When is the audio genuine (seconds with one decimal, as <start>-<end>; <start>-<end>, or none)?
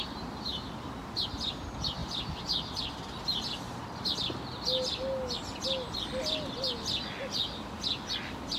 0.0-8.6